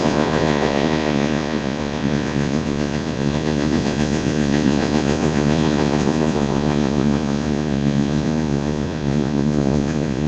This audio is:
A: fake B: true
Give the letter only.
A